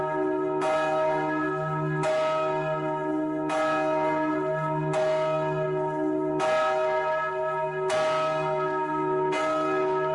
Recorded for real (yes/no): yes